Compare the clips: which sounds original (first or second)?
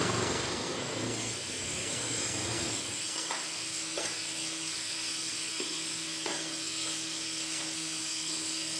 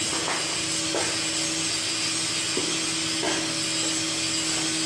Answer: second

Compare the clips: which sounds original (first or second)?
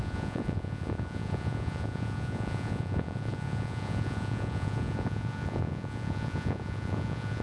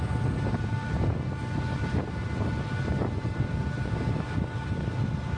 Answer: second